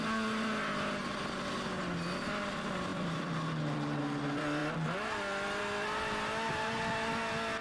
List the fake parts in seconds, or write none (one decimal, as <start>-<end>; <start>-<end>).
1.0-1.5; 2.9-4.0